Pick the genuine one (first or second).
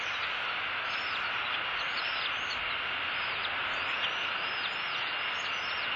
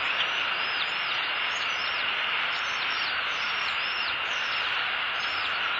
first